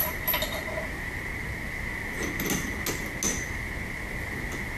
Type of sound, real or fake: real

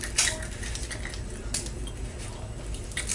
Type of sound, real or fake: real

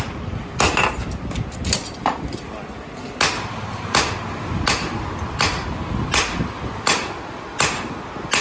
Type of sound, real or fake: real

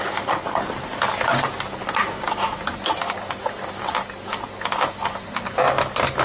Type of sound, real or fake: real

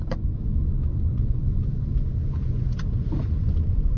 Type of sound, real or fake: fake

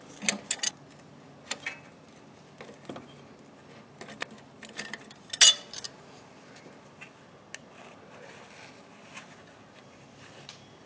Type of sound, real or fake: real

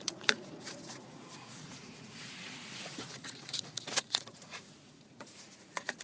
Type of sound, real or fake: fake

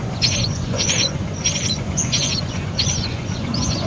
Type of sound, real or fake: fake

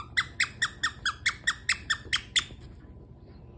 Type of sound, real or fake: real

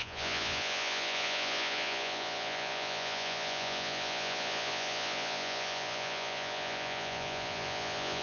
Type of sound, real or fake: fake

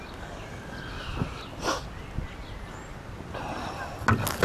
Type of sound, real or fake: real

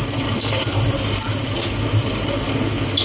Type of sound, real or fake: real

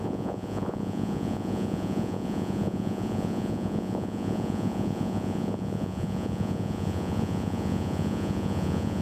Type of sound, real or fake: fake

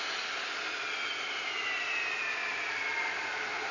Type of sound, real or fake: real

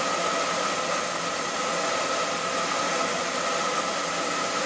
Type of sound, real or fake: real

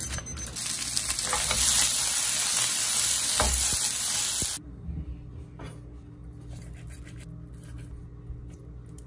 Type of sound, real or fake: real